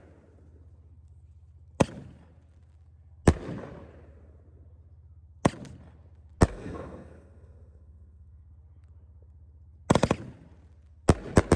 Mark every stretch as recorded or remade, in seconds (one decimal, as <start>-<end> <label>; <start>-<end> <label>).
0.0-6.5 recorded; 6.5-8.5 remade; 8.5-11.6 recorded